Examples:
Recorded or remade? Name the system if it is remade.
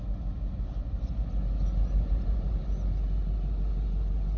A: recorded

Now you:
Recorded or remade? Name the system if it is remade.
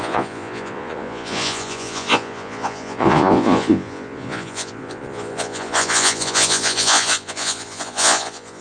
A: remade, vocoder, Vocos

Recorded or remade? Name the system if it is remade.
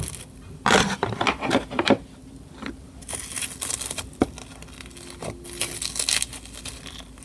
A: recorded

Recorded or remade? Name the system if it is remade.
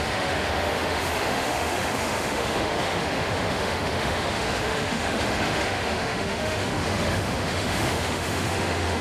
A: remade, autoencoder, DAC-VAE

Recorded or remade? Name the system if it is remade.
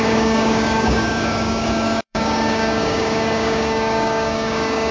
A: remade, codec, DAC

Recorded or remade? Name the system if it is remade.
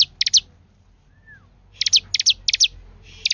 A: recorded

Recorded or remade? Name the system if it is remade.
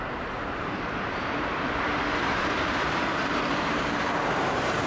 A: remade, vocoder, BigVGAN v2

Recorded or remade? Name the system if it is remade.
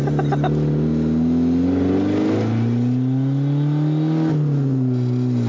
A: recorded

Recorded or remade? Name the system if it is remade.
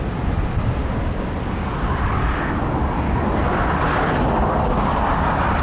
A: recorded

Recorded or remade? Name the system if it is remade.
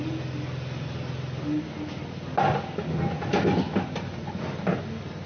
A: recorded